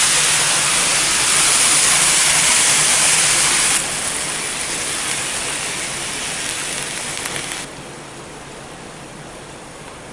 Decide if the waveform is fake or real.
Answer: real